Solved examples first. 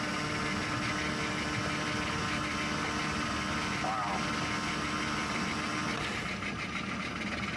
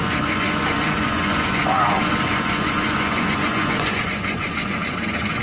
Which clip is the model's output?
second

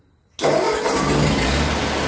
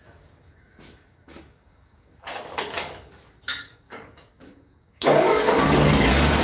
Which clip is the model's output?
second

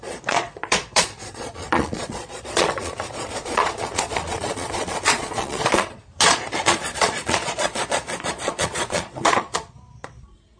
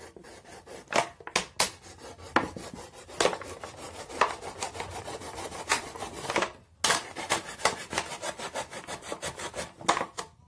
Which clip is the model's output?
first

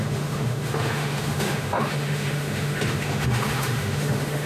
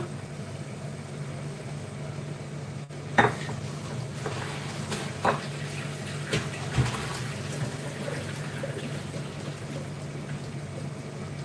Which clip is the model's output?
first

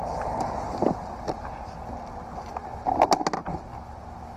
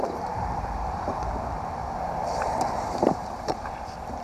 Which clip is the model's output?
second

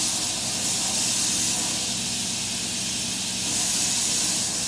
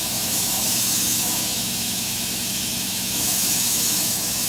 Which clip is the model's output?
second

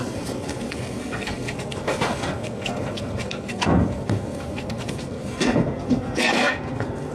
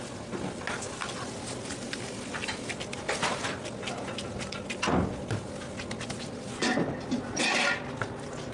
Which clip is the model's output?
first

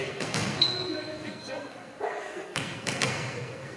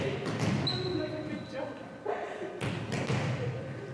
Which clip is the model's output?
first